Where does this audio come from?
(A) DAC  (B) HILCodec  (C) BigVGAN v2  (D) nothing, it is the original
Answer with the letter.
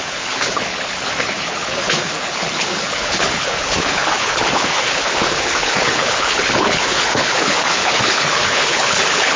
B